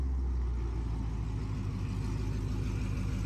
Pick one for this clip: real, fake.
real